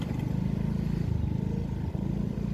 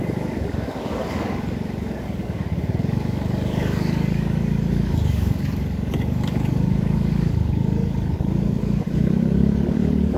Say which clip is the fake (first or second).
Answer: second